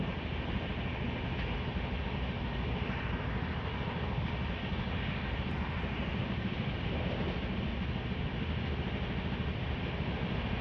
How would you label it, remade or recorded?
recorded